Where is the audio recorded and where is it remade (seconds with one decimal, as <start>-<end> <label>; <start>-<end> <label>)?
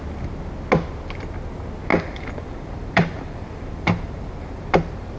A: 0.0-1.9 recorded; 1.9-5.2 remade